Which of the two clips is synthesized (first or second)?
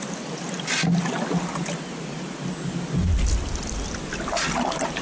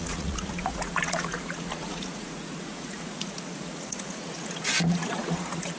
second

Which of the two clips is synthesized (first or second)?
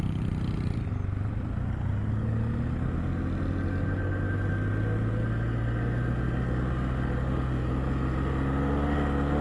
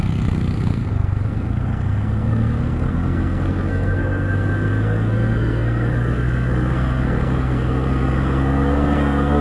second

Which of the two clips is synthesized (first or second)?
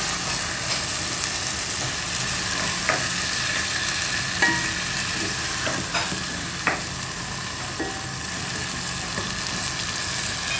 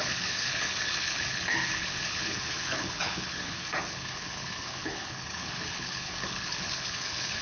second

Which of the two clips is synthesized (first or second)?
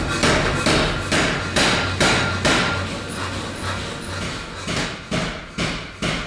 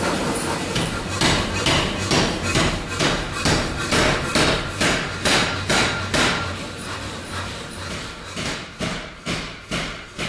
second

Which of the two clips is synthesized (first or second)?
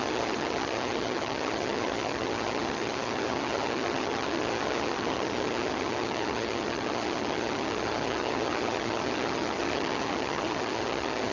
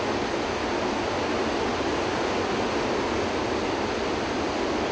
first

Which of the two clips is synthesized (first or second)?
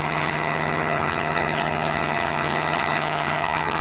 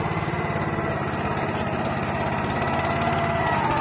first